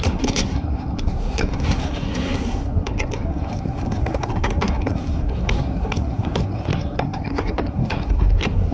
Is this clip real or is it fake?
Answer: fake